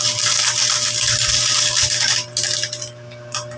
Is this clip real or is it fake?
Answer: real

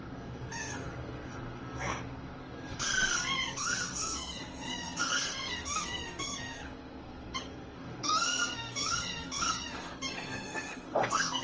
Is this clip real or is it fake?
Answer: fake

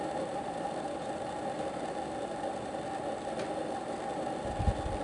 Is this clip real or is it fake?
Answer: real